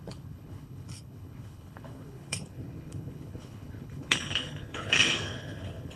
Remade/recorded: remade